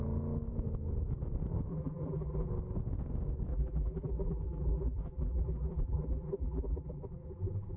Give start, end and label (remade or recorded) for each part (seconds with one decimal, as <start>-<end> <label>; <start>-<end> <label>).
0.0-1.7 recorded; 1.7-2.5 remade; 2.5-3.5 recorded; 3.5-7.8 remade